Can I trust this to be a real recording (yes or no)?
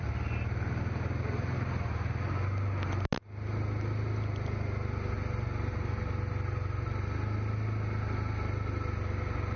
yes